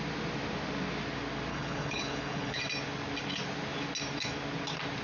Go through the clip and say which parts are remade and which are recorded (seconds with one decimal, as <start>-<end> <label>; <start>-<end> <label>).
0.0-1.5 recorded; 1.5-2.6 remade; 2.6-5.0 recorded